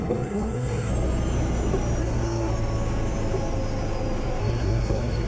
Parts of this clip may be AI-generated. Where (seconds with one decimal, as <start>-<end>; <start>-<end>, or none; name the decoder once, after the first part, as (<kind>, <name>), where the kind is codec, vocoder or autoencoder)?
0.0-0.9 (codec, SNAC); 2.0-2.5; 4.4-5.3